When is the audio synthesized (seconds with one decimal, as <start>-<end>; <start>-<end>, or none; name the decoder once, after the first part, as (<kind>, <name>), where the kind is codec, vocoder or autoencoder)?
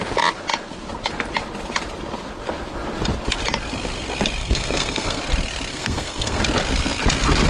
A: 4.4-5.2 (codec, SNAC); 5.7-6.4